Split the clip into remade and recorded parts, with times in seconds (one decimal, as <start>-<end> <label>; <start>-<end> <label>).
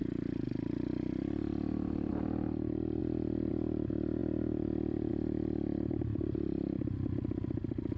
0.0-2.1 recorded; 2.1-3.0 remade; 3.0-3.5 recorded; 3.5-8.0 remade